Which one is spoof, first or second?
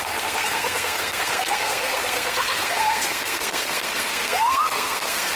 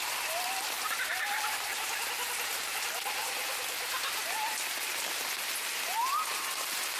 first